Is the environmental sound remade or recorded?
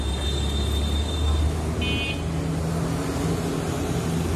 recorded